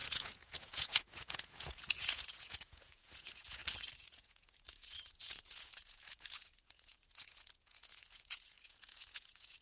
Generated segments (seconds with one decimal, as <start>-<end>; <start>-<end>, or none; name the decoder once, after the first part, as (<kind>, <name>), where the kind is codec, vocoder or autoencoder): 0.0-3.6 (vocoder, Vocos); 4.1-9.6